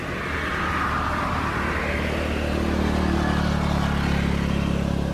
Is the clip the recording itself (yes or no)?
yes